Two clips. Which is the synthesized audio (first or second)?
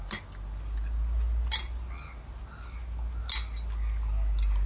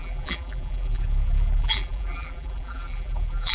second